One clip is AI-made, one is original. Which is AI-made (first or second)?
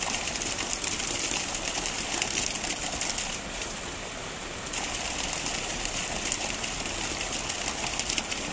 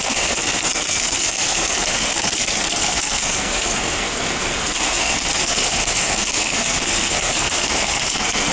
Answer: second